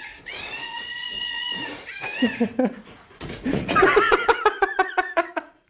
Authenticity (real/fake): fake